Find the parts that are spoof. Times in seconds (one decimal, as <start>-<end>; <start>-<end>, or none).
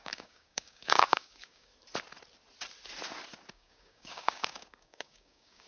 0.0-1.7; 3.5-5.7